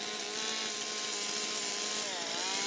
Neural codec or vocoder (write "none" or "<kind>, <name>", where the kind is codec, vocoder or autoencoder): none